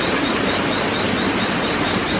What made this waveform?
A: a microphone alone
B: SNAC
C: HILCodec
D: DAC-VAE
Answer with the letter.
A